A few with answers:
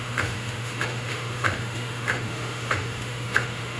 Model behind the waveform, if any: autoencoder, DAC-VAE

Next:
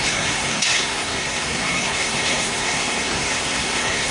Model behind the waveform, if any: codec, SNAC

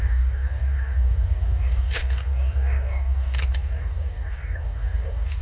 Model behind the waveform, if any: codec, DAC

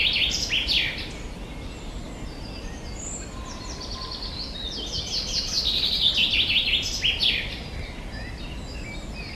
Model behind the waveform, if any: none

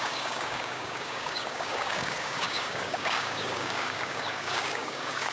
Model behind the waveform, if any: codec, DAC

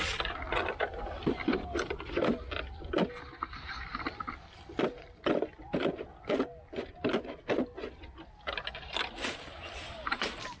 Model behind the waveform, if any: none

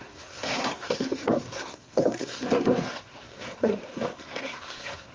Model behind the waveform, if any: codec, SNAC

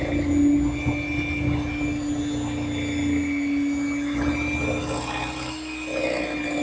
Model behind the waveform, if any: none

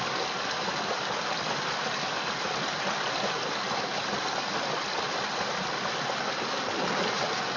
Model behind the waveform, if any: none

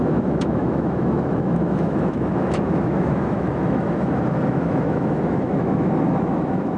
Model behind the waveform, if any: autoencoder, DAC-VAE